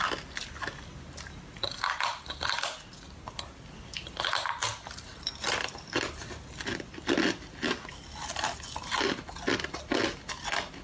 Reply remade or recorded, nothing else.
recorded